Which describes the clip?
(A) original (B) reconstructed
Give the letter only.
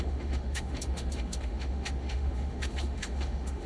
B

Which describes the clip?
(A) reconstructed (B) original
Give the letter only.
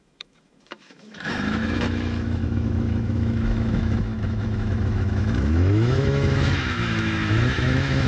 A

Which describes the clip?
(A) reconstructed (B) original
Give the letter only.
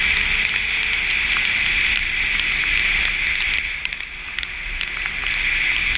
B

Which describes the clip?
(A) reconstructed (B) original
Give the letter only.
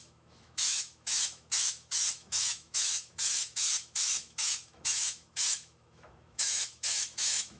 A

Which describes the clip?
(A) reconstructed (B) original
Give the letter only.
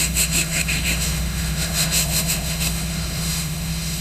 A